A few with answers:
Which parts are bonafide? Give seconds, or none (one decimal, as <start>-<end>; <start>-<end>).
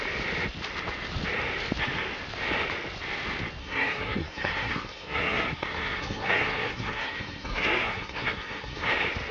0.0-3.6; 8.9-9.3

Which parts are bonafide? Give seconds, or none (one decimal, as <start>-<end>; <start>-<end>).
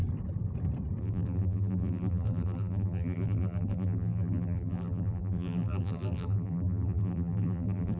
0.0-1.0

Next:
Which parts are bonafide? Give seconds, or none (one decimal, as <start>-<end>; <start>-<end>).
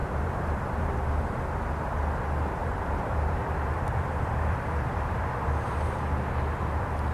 0.9-2.6; 6.0-7.1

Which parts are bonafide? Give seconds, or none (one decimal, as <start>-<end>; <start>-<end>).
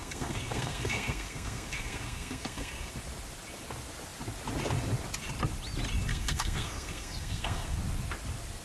2.9-6.1; 7.8-8.6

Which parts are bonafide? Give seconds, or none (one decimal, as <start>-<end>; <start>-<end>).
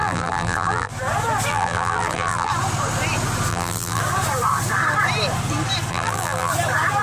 0.9-1.5; 2.5-3.5; 4.0-5.9; 6.5-7.0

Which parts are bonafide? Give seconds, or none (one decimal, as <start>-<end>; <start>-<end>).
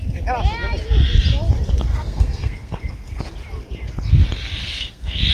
0.0-1.9; 3.2-4.6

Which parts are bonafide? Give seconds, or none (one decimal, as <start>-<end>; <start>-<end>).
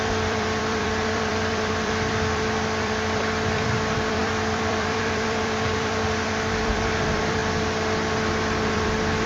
7.4-8.7